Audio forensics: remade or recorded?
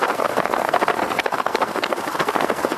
remade